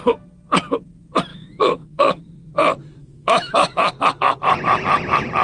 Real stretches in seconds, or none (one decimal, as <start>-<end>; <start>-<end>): 0.0-1.3; 2.2-3.0; 3.9-5.4